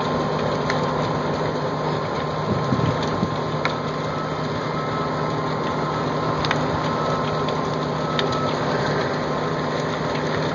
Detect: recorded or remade recorded